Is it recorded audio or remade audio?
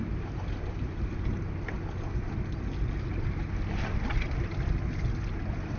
recorded